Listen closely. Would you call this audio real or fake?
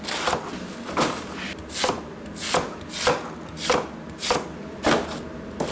real